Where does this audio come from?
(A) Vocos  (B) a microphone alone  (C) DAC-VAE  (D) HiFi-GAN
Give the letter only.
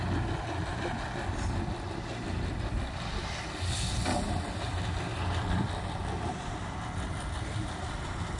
B